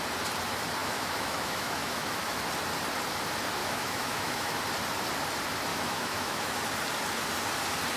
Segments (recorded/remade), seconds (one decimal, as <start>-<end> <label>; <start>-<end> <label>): 0.0-0.8 recorded; 0.8-2.4 remade; 2.4-3.6 recorded; 3.6-4.6 remade; 4.6-5.7 recorded; 5.7-6.6 remade; 6.6-8.0 recorded